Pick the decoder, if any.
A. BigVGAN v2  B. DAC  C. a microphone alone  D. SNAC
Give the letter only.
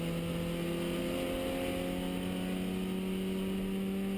C